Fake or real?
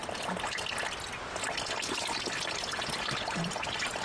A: real